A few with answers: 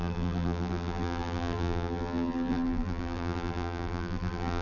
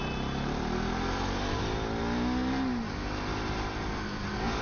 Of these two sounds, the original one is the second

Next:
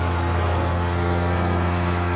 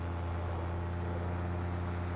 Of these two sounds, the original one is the second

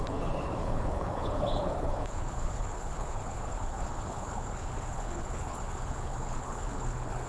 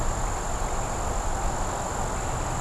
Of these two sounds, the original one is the second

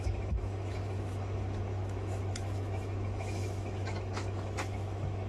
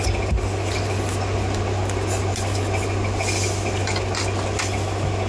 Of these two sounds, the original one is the second